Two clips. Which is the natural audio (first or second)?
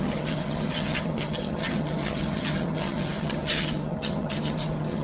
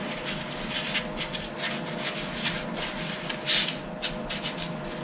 second